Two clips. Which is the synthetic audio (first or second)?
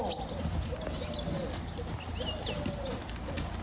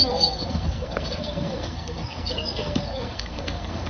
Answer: second